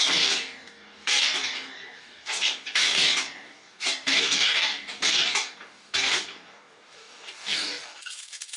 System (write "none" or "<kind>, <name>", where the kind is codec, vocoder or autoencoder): codec, DAC